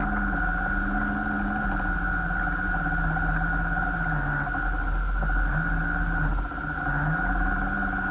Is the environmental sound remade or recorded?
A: recorded